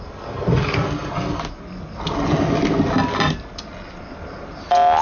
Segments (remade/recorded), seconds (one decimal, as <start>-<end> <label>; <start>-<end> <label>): 0.0-5.0 recorded